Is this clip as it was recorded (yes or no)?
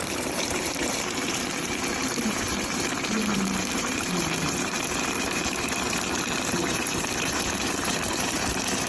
no